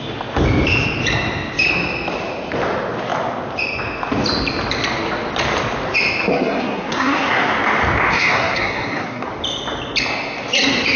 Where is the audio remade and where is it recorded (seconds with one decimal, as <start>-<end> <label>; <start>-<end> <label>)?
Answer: 0.0-6.3 recorded; 6.3-7.5 remade; 7.5-8.1 recorded; 8.1-9.3 remade; 9.3-11.0 recorded